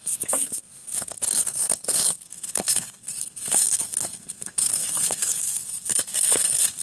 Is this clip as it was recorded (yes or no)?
no